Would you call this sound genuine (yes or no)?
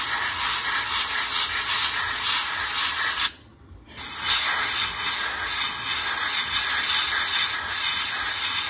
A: yes